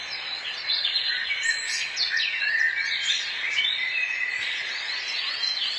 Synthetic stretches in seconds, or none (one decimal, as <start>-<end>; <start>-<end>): 0.0-5.8